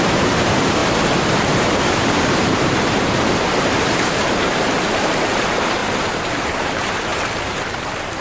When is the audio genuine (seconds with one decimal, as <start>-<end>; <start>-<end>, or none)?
5.8-6.4